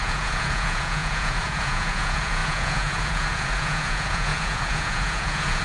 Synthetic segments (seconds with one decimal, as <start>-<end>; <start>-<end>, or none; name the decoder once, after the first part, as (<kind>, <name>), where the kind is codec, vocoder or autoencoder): 0.0-5.6 (vocoder, Vocos)